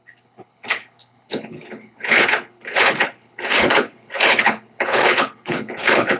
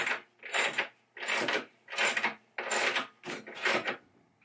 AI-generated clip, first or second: first